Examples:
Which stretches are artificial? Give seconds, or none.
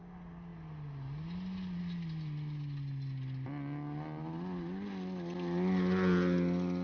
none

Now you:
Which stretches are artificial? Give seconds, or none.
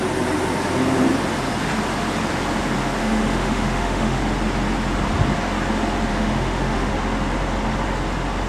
3.0-4.2 (autoencoder, DAC-VAE); 6.1-6.9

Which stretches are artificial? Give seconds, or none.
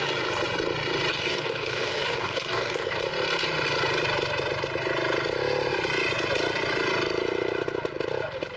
1.1-2.9 (codec, DAC)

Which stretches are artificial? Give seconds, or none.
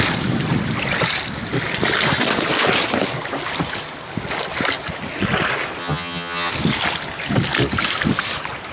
5.8-6.5 (vocoder, HiFi-GAN)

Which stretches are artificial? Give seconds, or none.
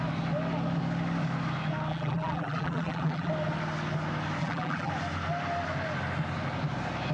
1.9-3.3 (vocoder, BigVGAN v2); 4.4-4.9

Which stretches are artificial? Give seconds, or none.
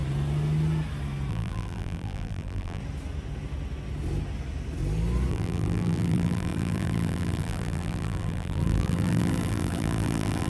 1.3-2.8 (vocoder, BigVGAN v2); 5.3-10.5